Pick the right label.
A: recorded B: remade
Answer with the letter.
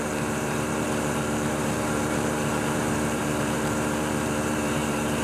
B